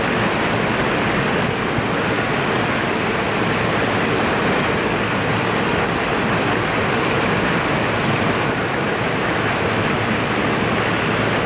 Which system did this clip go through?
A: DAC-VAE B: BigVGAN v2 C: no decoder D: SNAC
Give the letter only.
C